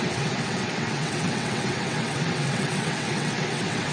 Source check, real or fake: fake